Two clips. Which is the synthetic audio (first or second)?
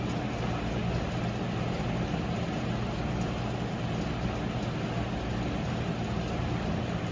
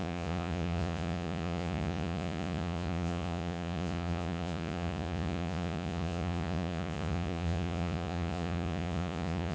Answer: second